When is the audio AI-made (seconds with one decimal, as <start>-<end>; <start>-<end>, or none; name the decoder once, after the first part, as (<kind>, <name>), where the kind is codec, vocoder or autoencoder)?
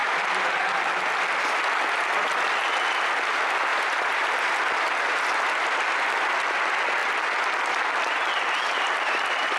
0.0-0.8 (vocoder, BigVGAN v2); 3.7-4.3